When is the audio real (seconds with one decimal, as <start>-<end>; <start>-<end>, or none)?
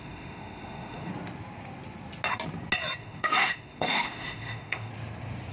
1.1-3.0; 4.9-5.5